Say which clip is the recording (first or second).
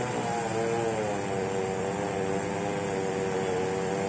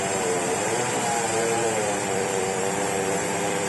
first